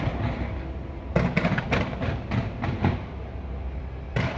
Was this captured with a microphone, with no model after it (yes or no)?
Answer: yes